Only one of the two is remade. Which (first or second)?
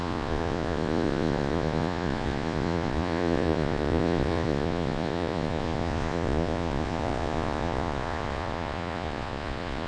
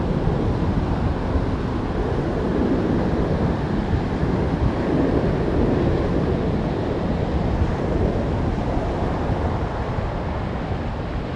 first